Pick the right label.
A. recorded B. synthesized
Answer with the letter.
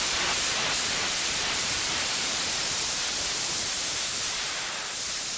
B